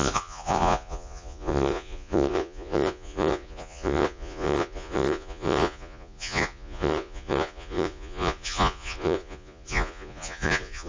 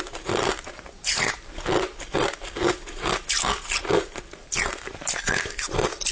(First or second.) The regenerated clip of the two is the first